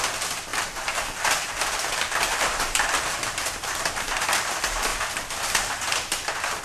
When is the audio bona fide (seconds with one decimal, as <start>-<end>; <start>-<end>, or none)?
0.0-0.5; 4.5-6.6